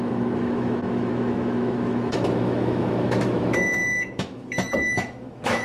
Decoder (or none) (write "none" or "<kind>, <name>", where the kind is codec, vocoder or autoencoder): autoencoder, DAC-VAE